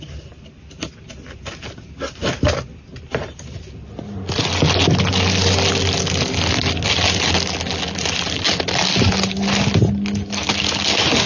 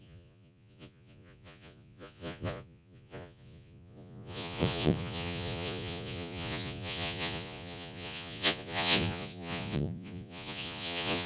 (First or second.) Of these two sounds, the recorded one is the first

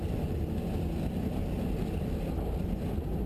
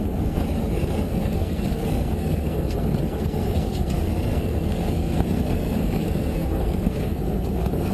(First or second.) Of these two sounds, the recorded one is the first